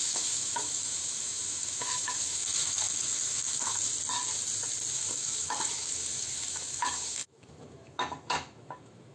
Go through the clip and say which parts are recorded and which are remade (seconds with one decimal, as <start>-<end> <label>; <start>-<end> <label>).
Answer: 0.0-3.9 remade; 3.9-4.9 recorded; 4.9-9.1 remade